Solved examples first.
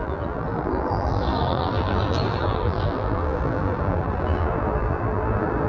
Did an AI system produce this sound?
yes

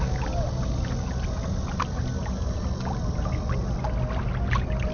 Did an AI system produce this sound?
no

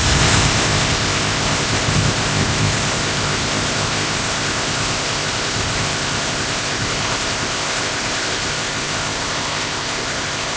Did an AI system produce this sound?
yes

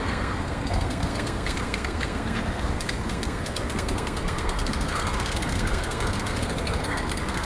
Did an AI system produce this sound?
yes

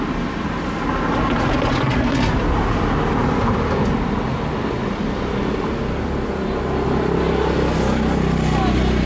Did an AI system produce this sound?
no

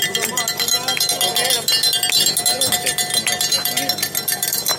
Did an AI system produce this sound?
no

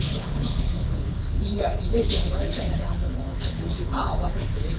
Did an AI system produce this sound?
yes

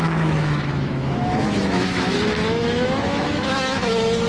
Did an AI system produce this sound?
yes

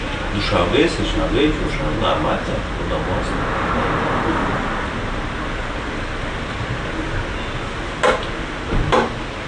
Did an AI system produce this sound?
no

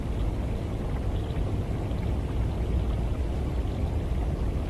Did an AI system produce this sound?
no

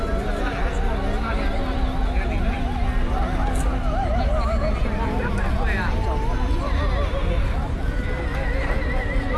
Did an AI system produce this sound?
no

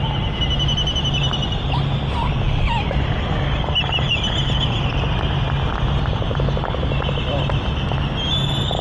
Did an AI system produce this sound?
no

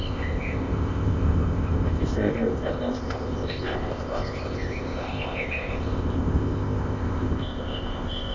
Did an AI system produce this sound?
yes